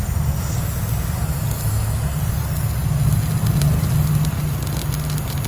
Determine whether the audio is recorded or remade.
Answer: recorded